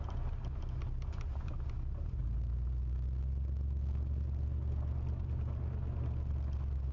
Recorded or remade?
recorded